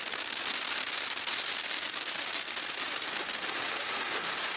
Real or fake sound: real